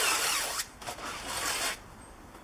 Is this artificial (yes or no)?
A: no